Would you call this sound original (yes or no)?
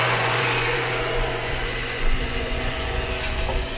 no